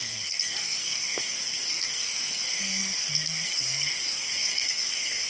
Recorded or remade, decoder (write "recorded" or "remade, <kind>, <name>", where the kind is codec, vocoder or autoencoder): remade, codec, SNAC